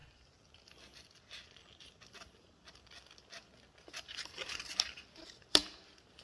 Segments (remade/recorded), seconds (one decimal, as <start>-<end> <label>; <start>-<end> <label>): 0.0-5.6 recorded; 5.6-6.2 remade